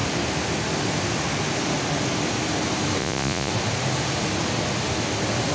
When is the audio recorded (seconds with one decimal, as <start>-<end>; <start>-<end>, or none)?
0.0-3.0; 3.5-5.5